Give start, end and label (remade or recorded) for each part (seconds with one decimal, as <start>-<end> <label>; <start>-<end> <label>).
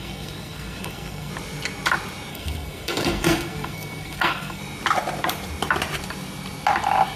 0.0-1.3 remade; 1.3-2.3 recorded; 2.3-4.6 remade; 4.6-7.2 recorded